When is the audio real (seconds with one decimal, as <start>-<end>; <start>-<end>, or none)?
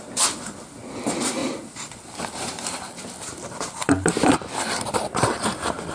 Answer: 0.0-1.4; 4.9-5.9